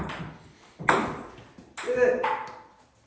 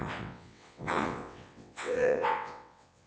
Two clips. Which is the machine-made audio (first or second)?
second